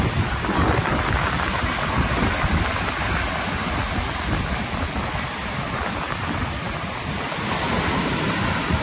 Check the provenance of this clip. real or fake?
real